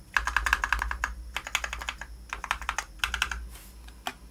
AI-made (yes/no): no